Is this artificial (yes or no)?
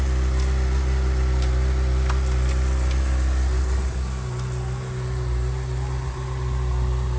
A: no